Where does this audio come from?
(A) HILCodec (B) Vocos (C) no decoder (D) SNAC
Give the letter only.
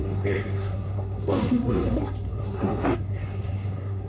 D